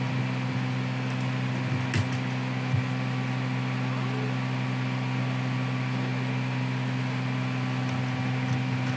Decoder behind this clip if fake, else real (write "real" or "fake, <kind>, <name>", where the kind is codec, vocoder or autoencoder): real